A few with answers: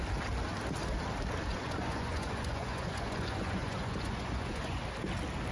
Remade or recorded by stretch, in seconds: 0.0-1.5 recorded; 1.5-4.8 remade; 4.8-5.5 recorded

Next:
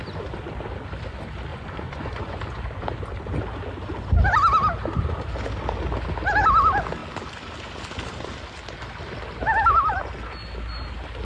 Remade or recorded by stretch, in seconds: 0.0-1.5 recorded; 1.5-2.6 remade; 2.6-11.2 recorded

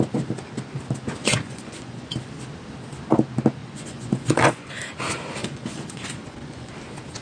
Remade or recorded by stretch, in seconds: 0.0-1.2 recorded; 1.2-2.1 remade; 2.1-3.6 recorded; 3.6-4.7 remade; 4.7-5.4 recorded; 5.4-6.7 remade; 6.7-7.2 recorded

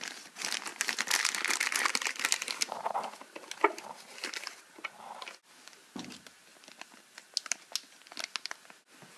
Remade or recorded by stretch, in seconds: 0.0-9.2 recorded

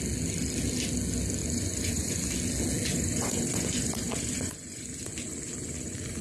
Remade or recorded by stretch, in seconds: 0.0-1.4 recorded; 1.4-2.3 remade; 2.3-2.9 recorded; 2.9-6.2 remade

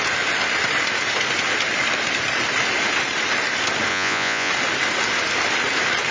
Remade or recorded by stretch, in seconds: 0.0-3.9 recorded; 3.9-4.5 remade; 4.5-6.1 recorded

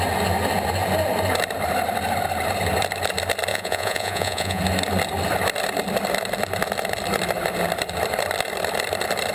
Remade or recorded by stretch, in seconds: 0.0-3.5 recorded; 3.5-4.6 remade; 4.6-9.3 recorded